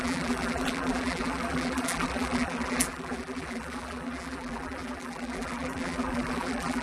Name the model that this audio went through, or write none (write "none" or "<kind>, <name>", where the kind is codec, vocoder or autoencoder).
vocoder, BigVGAN v2